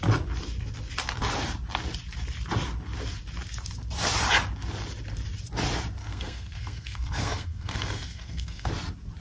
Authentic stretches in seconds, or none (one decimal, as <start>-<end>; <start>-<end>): 0.0-6.0; 8.7-9.2